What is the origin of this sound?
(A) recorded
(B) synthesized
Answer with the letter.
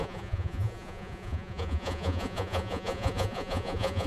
B